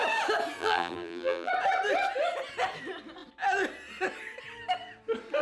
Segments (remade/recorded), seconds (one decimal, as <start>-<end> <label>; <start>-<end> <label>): 0.0-0.6 recorded; 0.6-1.5 remade; 1.5-5.4 recorded